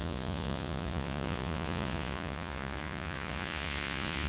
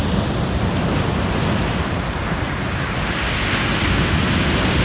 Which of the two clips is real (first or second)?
second